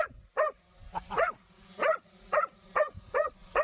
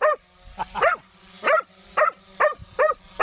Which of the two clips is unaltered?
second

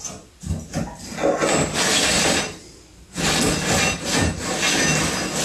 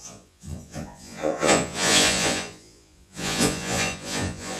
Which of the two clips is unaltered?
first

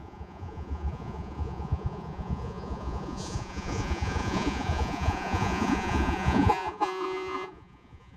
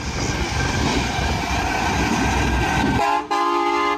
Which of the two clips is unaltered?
second